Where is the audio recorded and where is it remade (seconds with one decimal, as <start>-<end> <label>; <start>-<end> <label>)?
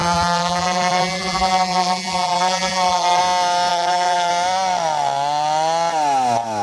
0.0-3.2 remade; 3.2-3.7 recorded; 3.7-4.3 remade; 4.3-6.6 recorded